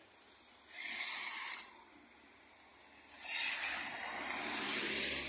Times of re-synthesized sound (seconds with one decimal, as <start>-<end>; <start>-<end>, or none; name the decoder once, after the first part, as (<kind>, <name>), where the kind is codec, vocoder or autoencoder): 0.0-2.7 (vocoder, BigVGAN v2); 4.0-5.3